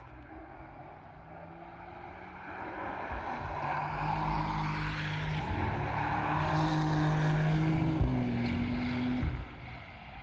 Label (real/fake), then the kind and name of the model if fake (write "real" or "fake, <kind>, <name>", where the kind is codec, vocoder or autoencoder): real